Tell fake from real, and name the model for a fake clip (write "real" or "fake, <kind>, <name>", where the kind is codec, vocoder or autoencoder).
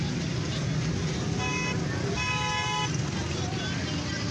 real